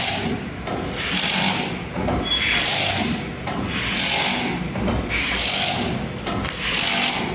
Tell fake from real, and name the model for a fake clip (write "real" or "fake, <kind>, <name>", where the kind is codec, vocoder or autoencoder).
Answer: real